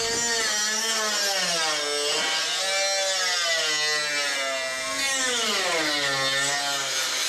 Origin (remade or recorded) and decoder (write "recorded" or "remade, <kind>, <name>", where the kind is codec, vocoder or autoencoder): recorded